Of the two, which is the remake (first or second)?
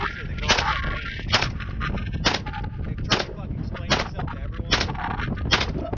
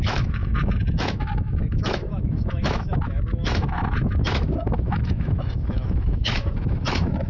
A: second